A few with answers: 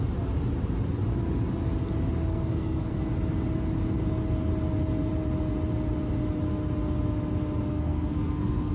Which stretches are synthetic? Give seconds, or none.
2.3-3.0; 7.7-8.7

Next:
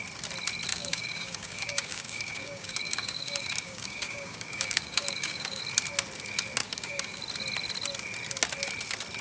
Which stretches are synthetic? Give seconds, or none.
0.7-5.6; 6.6-7.2

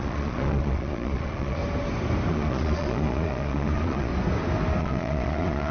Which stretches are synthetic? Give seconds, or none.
0.0-1.6; 2.3-4.1; 4.8-5.7